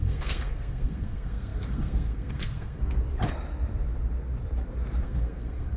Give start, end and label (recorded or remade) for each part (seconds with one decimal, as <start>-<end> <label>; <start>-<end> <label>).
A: 0.0-3.0 remade; 3.0-5.0 recorded; 5.0-5.8 remade

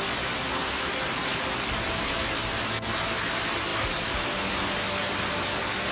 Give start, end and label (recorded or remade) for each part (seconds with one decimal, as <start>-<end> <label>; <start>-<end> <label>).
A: 0.0-5.9 recorded

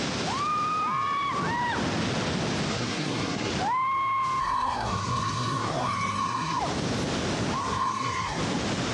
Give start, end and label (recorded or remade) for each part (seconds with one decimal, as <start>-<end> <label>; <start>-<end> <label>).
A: 0.0-2.7 recorded; 2.7-3.5 remade; 3.5-4.4 recorded; 4.4-6.6 remade; 6.6-7.6 recorded; 7.6-8.4 remade; 8.4-8.9 recorded

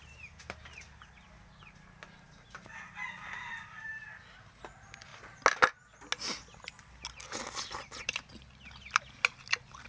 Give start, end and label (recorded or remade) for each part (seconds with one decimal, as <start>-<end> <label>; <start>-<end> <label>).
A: 0.0-9.9 recorded

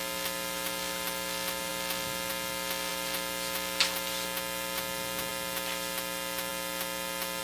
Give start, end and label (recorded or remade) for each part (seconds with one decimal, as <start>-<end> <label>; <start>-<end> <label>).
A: 0.0-7.4 recorded

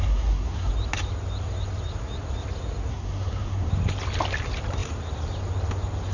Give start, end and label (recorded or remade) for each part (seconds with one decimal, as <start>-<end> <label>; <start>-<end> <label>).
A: 0.0-0.7 remade; 0.7-2.9 recorded; 2.9-3.7 remade; 3.7-6.1 recorded

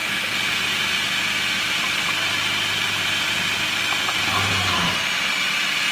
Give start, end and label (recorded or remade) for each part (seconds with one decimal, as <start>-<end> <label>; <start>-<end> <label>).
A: 0.0-5.9 recorded

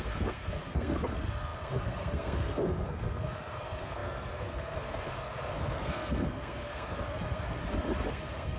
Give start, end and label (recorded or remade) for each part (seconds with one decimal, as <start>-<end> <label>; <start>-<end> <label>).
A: 0.0-7.6 remade; 7.6-8.1 recorded; 8.1-8.6 remade